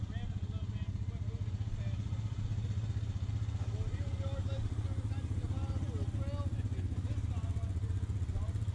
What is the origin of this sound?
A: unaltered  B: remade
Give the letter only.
A